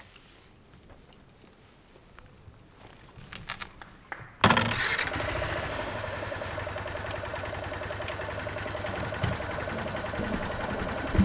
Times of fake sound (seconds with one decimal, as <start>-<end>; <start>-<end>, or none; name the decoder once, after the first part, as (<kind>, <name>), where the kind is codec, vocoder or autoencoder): 5.7-6.5 (autoencoder, DAC-VAE)